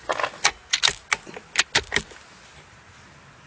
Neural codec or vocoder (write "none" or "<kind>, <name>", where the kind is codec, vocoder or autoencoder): none